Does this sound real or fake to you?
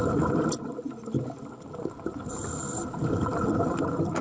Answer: real